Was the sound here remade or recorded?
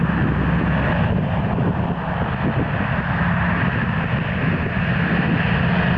recorded